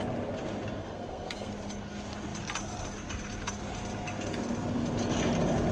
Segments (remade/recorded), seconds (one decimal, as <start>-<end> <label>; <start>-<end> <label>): 0.0-0.8 recorded; 0.8-1.5 remade; 1.5-5.7 recorded